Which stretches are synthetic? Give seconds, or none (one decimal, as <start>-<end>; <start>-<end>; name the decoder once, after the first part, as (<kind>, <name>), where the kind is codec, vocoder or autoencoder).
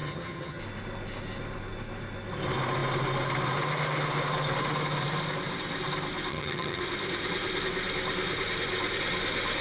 0.0-0.6 (vocoder, HiFi-GAN); 6.3-6.8